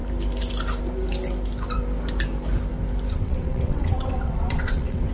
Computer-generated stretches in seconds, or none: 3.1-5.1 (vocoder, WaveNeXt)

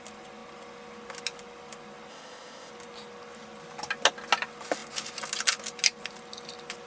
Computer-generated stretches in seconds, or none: 2.1-2.7 (codec, ZipCodec)

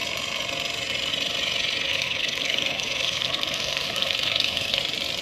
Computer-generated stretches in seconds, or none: 1.9-4.8 (codec, SNAC)

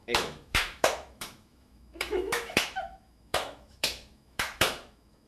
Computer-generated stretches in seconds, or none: 0.0-5.3 (autoencoder, DAC-VAE)

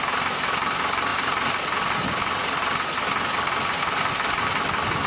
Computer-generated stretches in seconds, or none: none

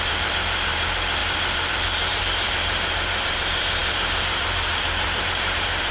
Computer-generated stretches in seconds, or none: 0.0-5.9 (vocoder, BigVGAN v2)